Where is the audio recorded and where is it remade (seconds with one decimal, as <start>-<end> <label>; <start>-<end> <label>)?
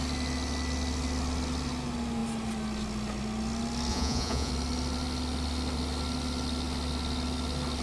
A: 0.0-3.9 recorded; 3.9-4.5 remade; 4.5-7.8 recorded